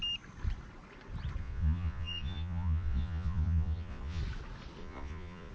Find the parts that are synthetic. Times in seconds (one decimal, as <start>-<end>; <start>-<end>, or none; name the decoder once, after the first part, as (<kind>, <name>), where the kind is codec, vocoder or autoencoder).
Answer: 1.4-4.2 (vocoder, Vocos); 4.8-5.5